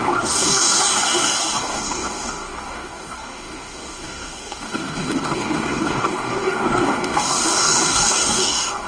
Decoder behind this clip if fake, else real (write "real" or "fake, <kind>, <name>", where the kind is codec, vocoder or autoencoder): fake, codec, DAC